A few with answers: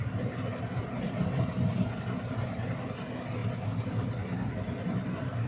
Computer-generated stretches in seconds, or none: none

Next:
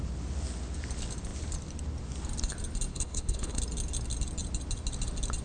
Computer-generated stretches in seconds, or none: 2.9-3.6 (codec, HILCodec)

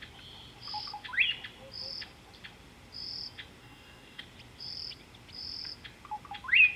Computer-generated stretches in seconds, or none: 3.6-4.2 (codec, DAC)